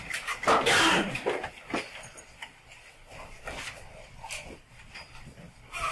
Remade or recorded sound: remade